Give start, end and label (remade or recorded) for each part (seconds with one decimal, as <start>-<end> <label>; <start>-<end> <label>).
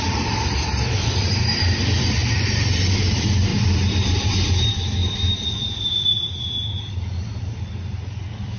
0.0-3.5 remade; 3.5-4.3 recorded; 4.3-8.6 remade